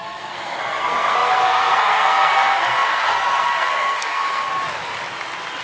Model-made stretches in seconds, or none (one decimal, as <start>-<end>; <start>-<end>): 0.0-4.5